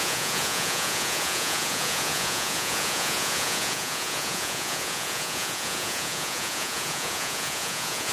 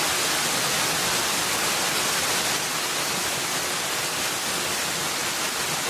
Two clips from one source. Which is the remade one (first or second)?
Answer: first